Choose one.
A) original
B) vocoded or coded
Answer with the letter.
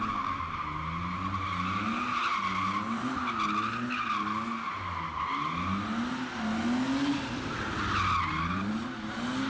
A